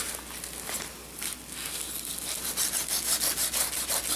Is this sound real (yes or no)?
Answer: yes